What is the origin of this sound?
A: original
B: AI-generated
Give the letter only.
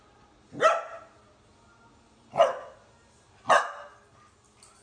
A